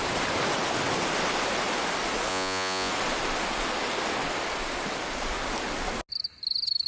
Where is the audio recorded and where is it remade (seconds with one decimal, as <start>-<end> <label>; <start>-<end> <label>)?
0.0-2.3 recorded; 2.3-2.9 remade; 2.9-6.9 recorded